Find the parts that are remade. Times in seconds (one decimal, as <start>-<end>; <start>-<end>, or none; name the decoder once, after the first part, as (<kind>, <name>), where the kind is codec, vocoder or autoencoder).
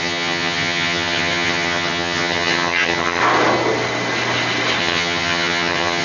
0.0-3.2 (vocoder, HiFi-GAN); 4.8-6.0